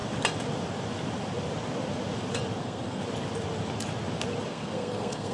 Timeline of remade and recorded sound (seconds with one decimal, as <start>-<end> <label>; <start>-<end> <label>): 0.0-2.6 recorded; 2.6-3.0 remade; 3.0-4.5 recorded; 4.5-5.3 remade